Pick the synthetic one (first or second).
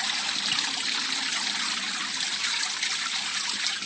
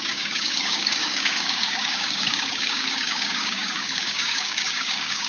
second